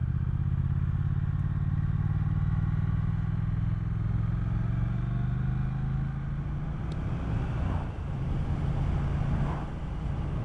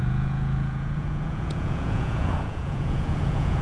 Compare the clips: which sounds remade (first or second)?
second